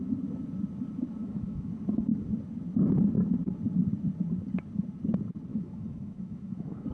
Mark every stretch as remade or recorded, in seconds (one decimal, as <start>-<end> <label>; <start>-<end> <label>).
0.0-1.2 recorded; 1.2-1.7 remade; 1.7-5.5 recorded; 5.5-6.9 remade